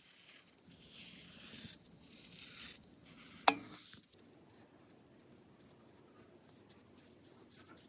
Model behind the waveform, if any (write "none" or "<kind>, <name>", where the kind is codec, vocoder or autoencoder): none